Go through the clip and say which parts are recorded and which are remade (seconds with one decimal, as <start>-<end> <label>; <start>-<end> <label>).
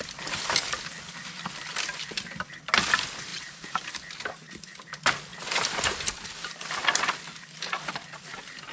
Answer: 0.0-3.3 recorded; 3.3-3.9 remade; 3.9-8.7 recorded